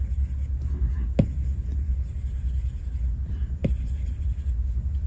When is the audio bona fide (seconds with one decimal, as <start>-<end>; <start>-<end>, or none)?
0.0-1.7; 2.8-3.6; 4.2-5.1